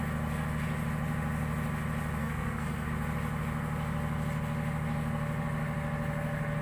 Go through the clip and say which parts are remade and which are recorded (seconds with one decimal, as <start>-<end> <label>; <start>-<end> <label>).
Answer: 0.0-2.2 recorded; 2.2-2.9 remade; 2.9-6.6 recorded